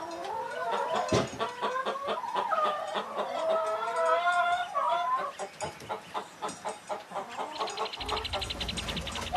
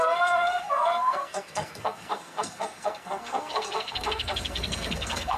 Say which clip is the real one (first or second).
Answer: first